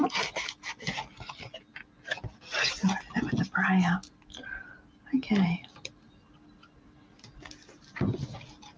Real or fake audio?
real